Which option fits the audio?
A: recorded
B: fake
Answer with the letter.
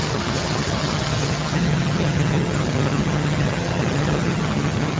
B